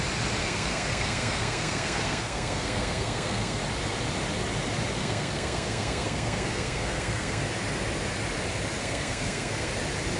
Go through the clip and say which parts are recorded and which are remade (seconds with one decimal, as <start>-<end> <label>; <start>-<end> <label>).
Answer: 0.0-0.4 recorded; 0.4-3.6 remade; 3.6-5.0 recorded; 5.0-7.4 remade; 7.4-8.8 recorded; 8.8-9.7 remade; 9.7-10.2 recorded